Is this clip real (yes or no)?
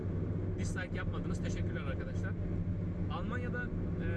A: yes